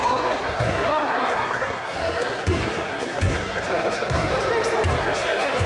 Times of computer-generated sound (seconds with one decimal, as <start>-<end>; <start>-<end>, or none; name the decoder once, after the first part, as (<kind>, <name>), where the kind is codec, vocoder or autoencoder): 0.0-4.3 (codec, SNAC); 4.9-5.7